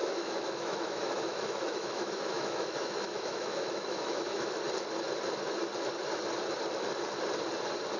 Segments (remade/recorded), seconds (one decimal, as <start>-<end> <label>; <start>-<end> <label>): 0.0-4.6 remade; 4.6-8.0 recorded